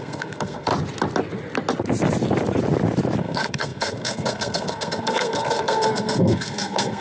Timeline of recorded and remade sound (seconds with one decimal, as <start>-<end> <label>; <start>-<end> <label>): 0.0-0.7 remade; 0.7-3.2 recorded; 3.2-7.0 remade